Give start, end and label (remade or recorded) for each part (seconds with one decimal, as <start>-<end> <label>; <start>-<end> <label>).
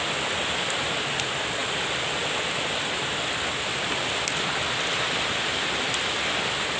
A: 0.0-6.8 recorded